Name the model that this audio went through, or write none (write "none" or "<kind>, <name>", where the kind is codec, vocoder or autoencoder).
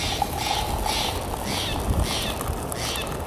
none